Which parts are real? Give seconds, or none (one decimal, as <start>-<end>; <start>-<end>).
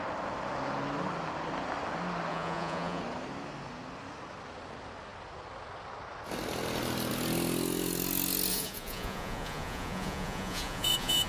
0.0-2.3; 3.0-8.5